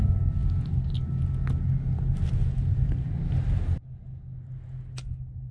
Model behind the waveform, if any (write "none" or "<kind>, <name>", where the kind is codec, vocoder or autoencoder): none